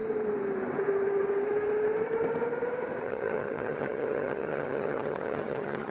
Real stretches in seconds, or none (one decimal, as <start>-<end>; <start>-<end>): 0.0-3.0